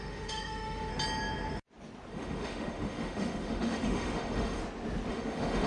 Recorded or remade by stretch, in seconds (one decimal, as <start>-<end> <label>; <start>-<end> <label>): 0.0-0.9 remade; 0.9-2.1 recorded; 2.1-4.6 remade; 4.6-5.1 recorded; 5.1-5.7 remade